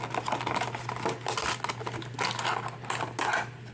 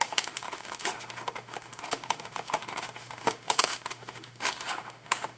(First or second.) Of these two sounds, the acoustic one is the first